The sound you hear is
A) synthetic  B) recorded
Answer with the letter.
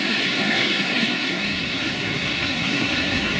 A